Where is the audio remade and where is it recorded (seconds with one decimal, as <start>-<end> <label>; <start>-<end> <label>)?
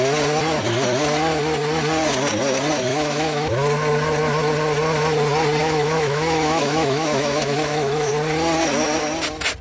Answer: 0.0-2.9 recorded; 2.9-3.5 remade; 3.5-5.6 recorded; 5.6-8.1 remade; 8.1-9.6 recorded